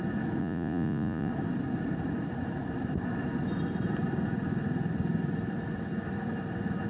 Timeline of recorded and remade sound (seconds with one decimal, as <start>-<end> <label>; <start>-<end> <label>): 0.0-0.4 recorded; 0.4-1.3 remade; 1.3-6.9 recorded